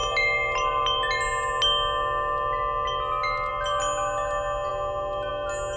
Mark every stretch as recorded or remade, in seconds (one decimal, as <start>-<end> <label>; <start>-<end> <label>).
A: 0.0-5.8 recorded